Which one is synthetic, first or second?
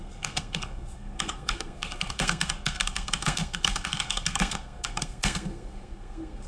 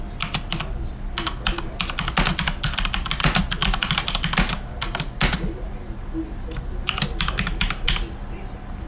first